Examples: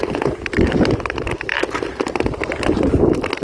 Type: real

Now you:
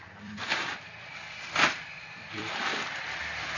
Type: fake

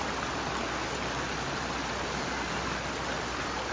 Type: real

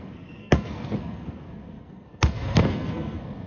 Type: fake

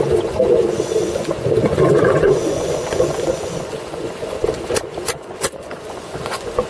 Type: fake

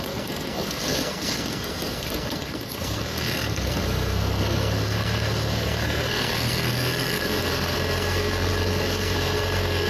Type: fake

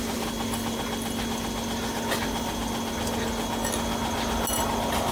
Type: real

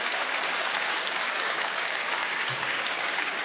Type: fake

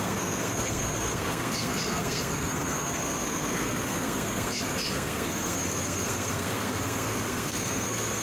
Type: fake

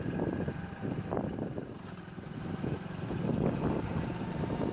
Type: real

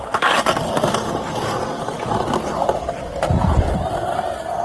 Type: fake